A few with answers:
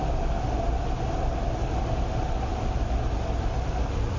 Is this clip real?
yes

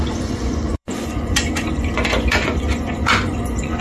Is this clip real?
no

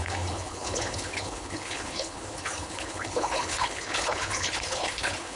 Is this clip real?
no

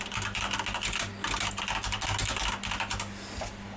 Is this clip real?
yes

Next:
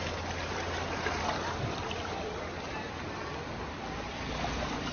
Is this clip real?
yes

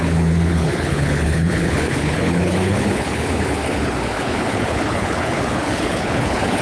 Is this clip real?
no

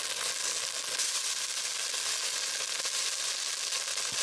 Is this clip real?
yes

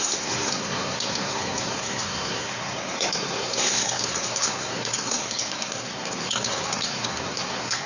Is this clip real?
no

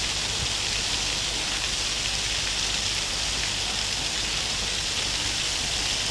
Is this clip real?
yes